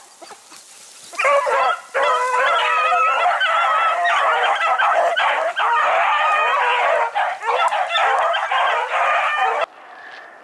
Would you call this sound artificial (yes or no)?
no